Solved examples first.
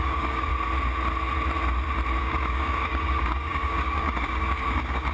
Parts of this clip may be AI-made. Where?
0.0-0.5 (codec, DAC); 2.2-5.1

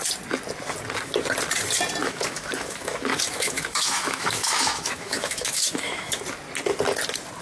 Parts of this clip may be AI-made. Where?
2.0-6.2 (autoencoder, DAC-VAE)

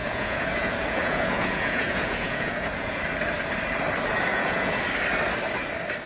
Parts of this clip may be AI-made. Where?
0.0-3.0 (vocoder, Vocos); 4.3-4.8

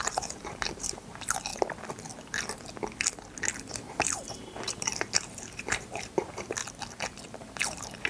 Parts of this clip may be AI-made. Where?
0.0-1.5 (vocoder, BigVGAN v2); 3.7-6.6; 7.3-8.1